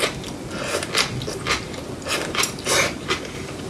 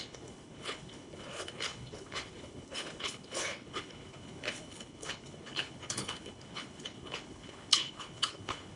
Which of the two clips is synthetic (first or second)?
second